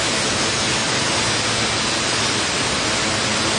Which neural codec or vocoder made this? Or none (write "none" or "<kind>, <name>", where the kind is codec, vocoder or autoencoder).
none